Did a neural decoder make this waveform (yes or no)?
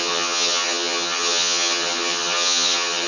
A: yes